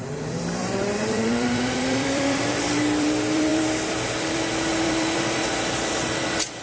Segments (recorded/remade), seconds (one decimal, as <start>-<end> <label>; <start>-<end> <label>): 0.0-6.6 remade